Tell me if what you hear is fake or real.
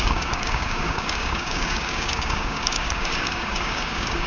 fake